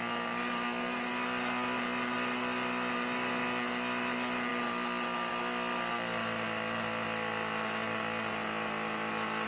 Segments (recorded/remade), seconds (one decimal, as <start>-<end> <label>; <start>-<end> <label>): 0.0-9.5 recorded